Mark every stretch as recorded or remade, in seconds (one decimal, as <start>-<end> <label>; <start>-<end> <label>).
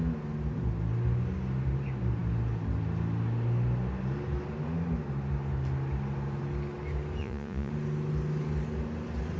0.0-7.2 recorded; 7.2-7.7 remade; 7.7-9.4 recorded